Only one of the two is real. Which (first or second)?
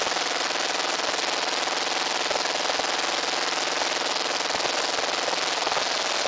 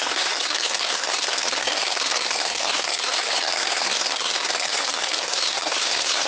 first